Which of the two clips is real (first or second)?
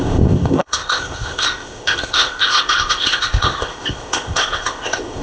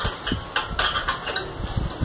second